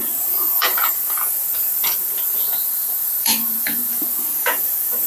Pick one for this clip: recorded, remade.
remade